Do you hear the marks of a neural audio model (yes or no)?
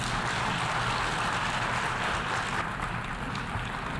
no